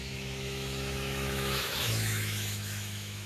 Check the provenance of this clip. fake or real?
fake